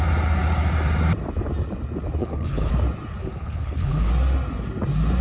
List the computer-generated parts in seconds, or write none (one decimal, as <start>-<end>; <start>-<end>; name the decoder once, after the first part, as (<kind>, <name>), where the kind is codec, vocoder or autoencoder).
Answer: 2.2-2.7 (codec, HILCodec); 3.2-4.1